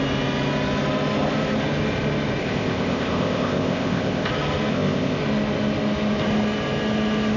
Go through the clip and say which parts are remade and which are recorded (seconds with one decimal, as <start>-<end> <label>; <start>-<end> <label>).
0.0-2.4 recorded; 2.4-4.3 remade; 4.3-4.7 recorded; 4.7-5.2 remade; 5.2-7.4 recorded